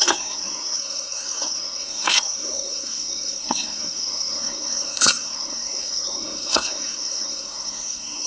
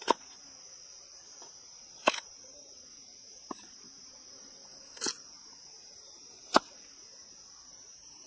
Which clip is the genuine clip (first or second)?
second